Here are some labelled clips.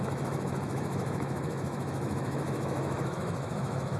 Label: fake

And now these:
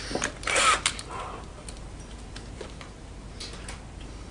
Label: real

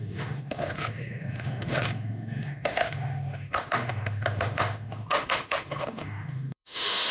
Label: fake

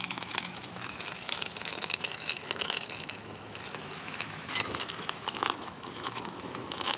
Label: fake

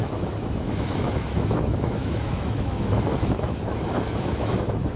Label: fake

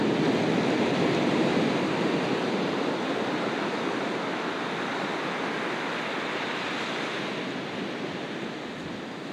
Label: real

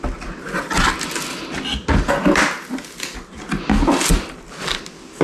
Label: real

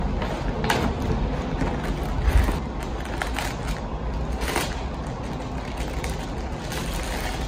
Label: real